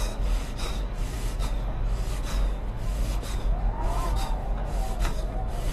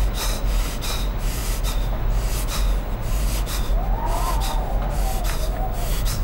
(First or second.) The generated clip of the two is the first